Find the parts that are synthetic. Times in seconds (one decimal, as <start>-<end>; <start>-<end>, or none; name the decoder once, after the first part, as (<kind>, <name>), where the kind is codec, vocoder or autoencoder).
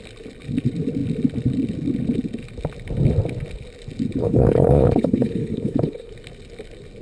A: 4.2-6.1 (codec, HILCodec)